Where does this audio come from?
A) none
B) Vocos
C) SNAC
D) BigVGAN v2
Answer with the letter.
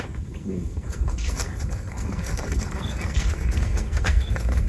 C